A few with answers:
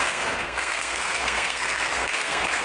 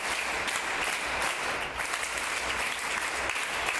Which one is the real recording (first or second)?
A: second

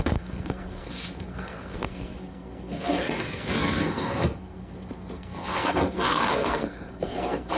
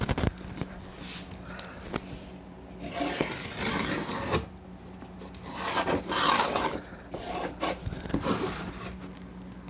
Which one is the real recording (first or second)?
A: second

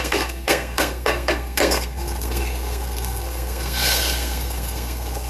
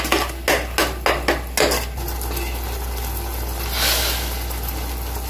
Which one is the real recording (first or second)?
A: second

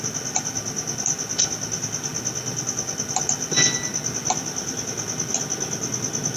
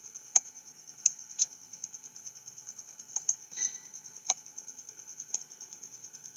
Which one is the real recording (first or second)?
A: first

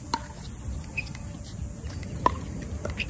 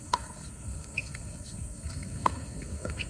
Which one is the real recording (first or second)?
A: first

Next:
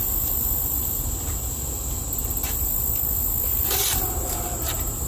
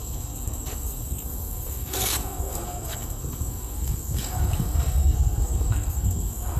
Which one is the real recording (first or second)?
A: first